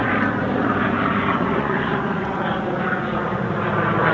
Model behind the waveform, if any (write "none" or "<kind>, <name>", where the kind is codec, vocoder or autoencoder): vocoder, Vocos